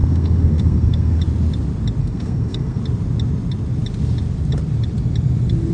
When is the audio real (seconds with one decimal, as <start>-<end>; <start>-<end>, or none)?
1.2-2.0; 2.8-5.7